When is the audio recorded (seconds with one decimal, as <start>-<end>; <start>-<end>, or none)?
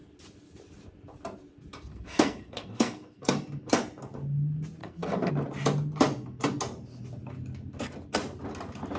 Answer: 0.0-1.9; 3.3-4.8; 5.3-9.0